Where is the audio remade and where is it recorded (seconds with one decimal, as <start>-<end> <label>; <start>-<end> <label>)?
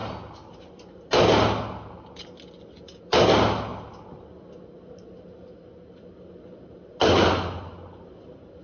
0.0-8.6 recorded